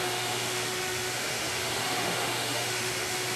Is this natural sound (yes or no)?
no